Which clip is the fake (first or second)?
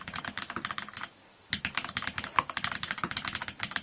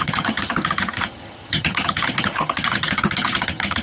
second